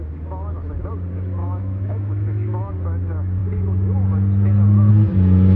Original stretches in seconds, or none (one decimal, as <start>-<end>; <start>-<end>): 0.0-1.4; 2.7-5.6